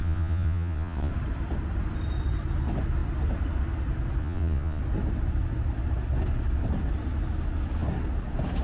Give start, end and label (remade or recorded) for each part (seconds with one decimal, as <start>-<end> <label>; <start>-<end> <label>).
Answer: 0.0-1.1 remade; 1.1-4.2 recorded; 4.2-4.8 remade; 4.8-8.6 recorded